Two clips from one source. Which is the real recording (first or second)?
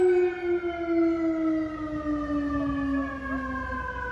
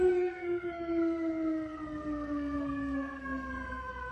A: first